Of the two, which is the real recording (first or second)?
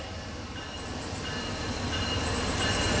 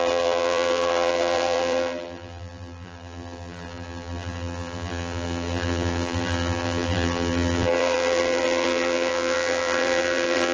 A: first